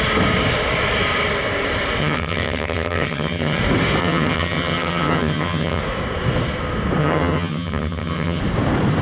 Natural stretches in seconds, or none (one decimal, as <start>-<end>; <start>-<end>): 0.0-2.0; 3.6-4.0; 5.8-7.0; 8.4-9.0